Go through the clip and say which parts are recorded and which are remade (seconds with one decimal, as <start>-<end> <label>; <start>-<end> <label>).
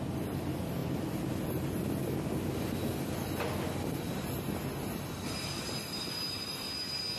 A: 0.0-7.2 recorded